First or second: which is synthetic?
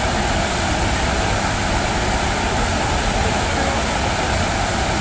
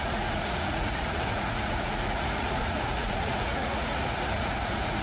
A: second